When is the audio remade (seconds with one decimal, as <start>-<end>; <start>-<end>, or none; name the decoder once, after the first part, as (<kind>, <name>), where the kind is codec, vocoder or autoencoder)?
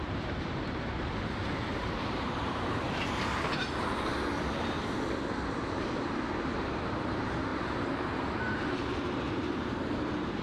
0.0-3.6 (vocoder, BigVGAN v2); 5.6-10.4